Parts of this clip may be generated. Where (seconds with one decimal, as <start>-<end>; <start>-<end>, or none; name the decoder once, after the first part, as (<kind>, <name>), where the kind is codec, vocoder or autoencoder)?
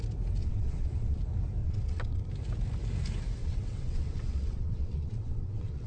0.4-1.2 (vocoder, WaveNeXt); 1.6-2.3; 3.4-5.9